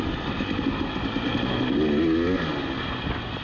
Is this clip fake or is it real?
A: real